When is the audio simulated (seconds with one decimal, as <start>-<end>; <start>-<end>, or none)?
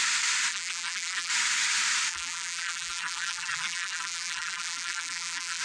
0.5-1.3; 2.1-5.6